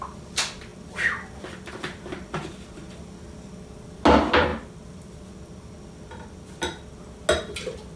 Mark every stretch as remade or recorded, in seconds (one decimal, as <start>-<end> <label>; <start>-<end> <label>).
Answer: 0.0-8.0 recorded